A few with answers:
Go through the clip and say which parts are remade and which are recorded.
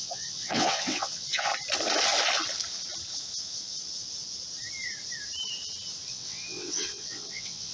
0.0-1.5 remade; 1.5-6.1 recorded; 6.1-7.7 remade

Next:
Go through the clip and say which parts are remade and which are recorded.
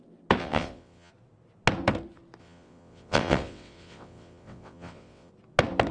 0.0-0.4 recorded; 0.4-1.1 remade; 1.1-2.4 recorded; 2.4-5.3 remade; 5.3-5.9 recorded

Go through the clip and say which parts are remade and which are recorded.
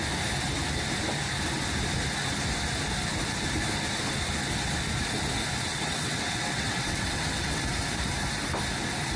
0.0-5.7 recorded; 5.7-7.6 remade; 7.6-9.2 recorded